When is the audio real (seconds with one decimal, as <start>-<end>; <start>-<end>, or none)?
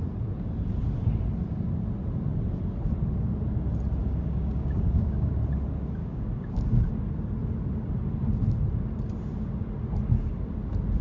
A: 0.0-4.0; 5.3-6.0; 6.9-11.0